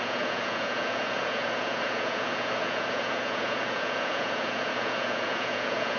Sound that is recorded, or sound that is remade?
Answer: remade